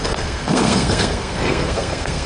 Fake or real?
fake